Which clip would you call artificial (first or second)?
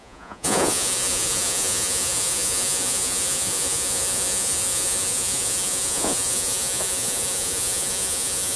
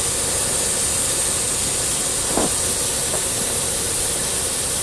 first